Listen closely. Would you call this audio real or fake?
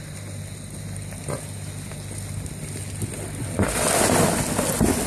real